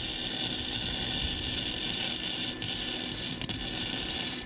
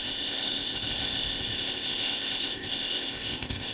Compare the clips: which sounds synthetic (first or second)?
second